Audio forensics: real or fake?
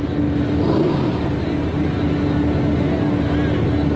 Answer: real